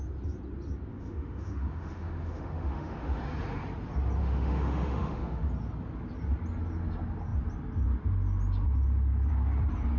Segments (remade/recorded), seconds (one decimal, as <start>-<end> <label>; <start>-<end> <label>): 0.0-0.9 recorded; 0.9-3.2 remade; 3.2-4.2 recorded; 4.2-5.5 remade; 5.5-10.0 recorded